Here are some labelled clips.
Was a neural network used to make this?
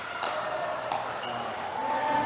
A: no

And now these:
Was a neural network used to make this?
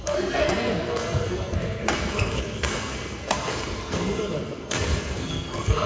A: yes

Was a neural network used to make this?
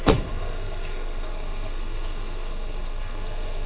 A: yes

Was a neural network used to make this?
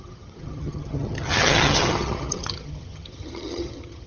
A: yes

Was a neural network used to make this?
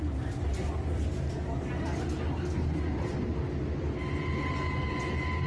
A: no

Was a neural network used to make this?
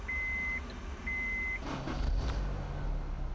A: no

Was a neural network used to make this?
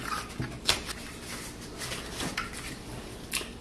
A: no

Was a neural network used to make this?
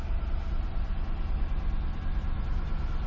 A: no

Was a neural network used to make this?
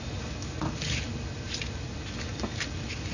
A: no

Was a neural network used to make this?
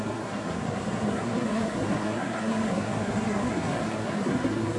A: yes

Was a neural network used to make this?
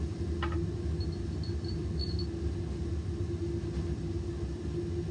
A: no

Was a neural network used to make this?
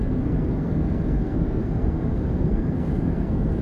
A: yes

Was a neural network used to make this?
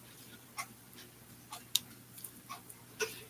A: no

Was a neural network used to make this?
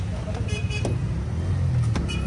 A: no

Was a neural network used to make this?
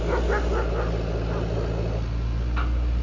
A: no